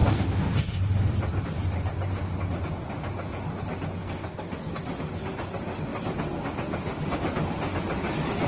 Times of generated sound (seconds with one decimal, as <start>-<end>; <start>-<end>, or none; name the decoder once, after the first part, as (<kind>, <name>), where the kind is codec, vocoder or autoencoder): 0.0-0.8 (codec, SNAC); 4.0-4.7